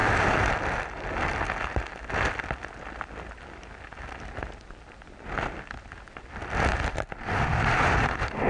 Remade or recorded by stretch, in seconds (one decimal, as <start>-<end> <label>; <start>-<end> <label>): 0.0-8.5 recorded